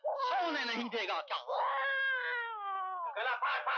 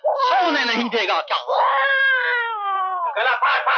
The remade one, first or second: second